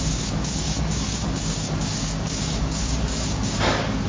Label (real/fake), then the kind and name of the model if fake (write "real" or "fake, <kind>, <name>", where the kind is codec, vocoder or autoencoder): fake, codec, DAC